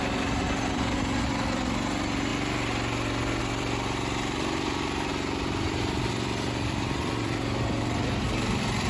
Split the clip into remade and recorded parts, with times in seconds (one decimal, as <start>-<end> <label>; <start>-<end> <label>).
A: 0.0-2.3 remade; 2.3-3.4 recorded; 3.4-5.1 remade; 5.1-6.1 recorded; 6.1-8.9 remade